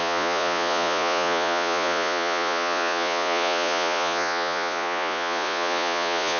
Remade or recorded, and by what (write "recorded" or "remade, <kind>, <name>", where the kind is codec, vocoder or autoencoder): remade, vocoder, Vocos